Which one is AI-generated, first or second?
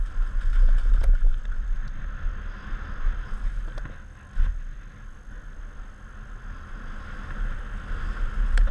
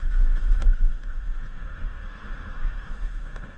second